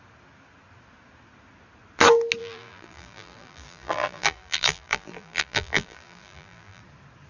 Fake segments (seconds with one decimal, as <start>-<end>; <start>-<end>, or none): 2.4-6.8